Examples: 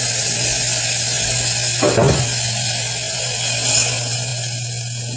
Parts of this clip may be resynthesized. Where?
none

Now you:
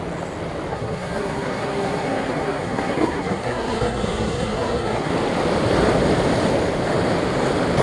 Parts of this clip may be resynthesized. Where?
0.7-5.1 (codec, SNAC)

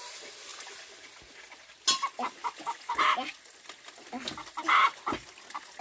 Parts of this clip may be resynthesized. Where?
none

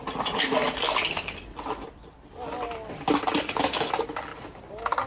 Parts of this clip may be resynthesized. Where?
1.5-2.1 (vocoder, BigVGAN v2)

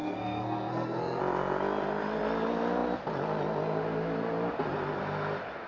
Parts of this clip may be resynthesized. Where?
0.0-1.2 (codec, SNAC)

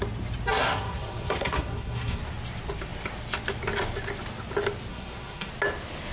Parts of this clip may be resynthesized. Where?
0.5-2.2 (codec, SNAC); 4.9-5.5